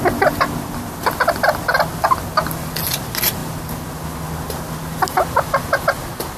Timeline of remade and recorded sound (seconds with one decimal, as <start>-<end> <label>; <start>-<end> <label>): 0.0-6.4 recorded